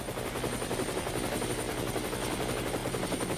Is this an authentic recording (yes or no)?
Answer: yes